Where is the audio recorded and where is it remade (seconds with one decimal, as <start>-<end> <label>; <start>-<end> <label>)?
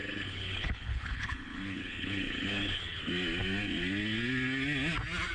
0.0-3.0 remade; 3.0-5.3 recorded